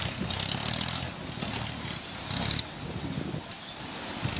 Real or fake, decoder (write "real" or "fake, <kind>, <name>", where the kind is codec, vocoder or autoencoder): real